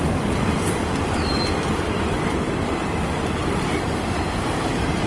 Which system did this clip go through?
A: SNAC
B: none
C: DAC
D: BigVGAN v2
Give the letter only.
D